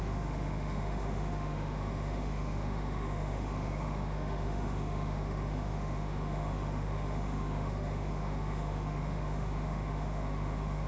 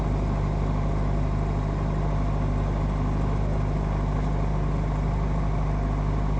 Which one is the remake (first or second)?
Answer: first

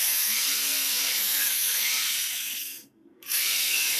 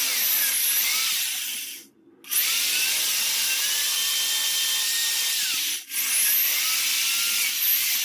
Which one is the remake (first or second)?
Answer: first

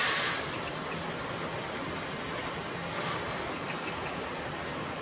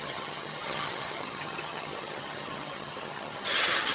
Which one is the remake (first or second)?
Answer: second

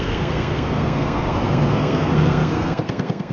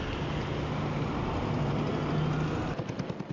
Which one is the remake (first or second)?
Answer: first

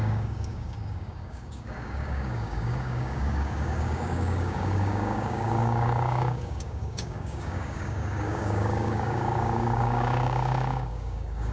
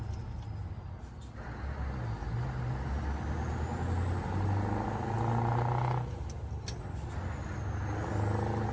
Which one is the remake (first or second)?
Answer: first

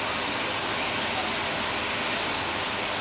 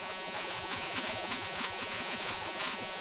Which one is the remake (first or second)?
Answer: second